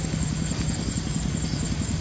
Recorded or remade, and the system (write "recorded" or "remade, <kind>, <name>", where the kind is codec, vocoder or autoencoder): recorded